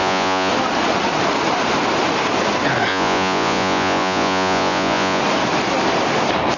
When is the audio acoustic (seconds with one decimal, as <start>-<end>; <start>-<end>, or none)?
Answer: 0.5-2.9; 5.2-6.6